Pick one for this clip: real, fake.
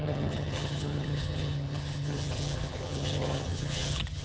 fake